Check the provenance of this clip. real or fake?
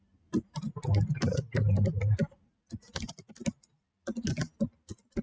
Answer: real